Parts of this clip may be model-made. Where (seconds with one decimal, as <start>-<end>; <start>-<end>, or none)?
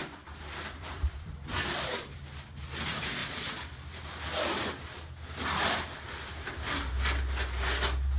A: 0.0-2.6